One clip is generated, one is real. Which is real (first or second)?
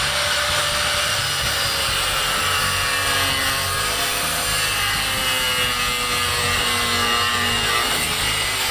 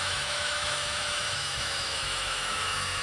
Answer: first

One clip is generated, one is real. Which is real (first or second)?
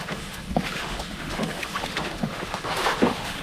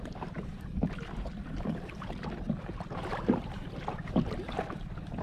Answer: second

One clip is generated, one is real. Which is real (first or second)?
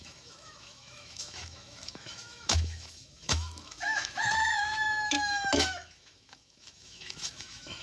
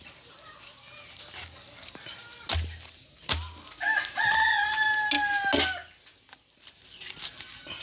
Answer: second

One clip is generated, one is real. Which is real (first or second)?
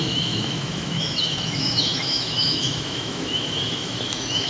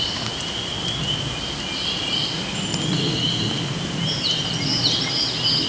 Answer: second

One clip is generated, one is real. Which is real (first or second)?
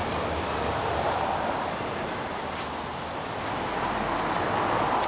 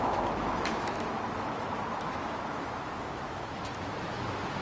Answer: first